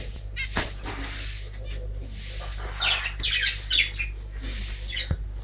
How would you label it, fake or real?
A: real